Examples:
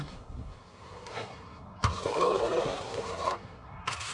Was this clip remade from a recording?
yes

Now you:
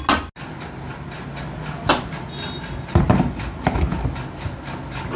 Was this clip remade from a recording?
no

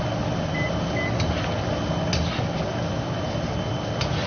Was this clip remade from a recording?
no